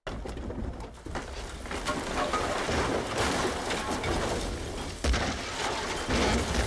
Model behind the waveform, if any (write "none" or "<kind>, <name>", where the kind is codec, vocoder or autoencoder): none